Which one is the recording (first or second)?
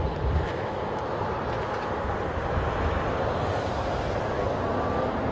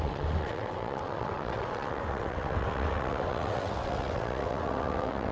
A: first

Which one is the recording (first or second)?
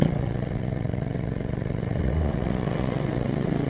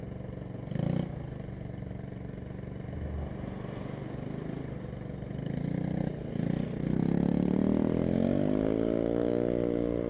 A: second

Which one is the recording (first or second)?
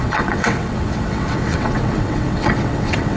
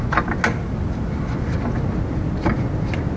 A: second